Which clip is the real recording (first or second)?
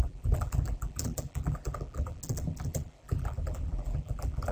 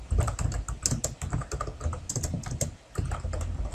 second